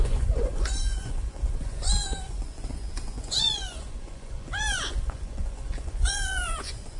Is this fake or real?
fake